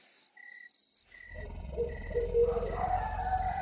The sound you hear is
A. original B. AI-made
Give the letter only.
A